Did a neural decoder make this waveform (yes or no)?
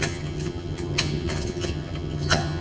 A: yes